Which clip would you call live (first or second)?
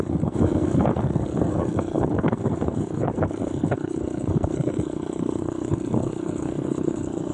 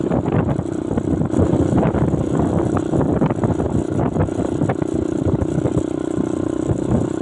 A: second